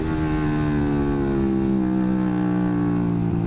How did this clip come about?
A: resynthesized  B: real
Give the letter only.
B